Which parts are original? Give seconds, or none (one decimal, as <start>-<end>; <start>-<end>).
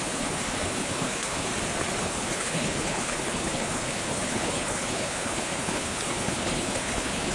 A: 1.5-2.0